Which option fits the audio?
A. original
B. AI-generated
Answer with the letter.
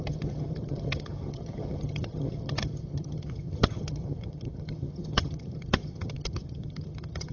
B